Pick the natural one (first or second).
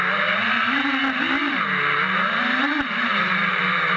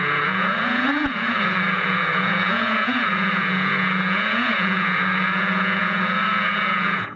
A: first